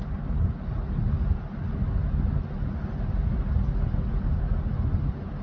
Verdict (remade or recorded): recorded